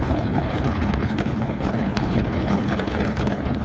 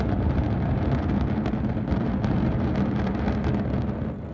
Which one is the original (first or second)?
second